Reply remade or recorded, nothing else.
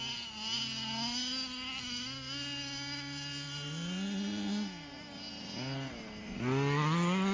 recorded